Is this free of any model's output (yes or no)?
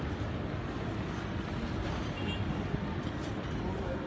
yes